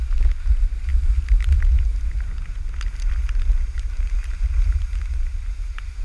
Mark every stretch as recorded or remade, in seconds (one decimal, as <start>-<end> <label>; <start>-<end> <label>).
0.0-6.0 recorded